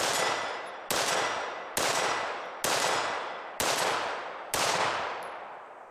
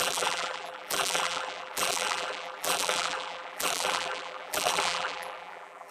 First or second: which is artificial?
second